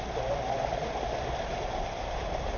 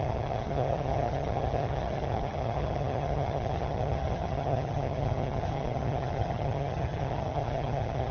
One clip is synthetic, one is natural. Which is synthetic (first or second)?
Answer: second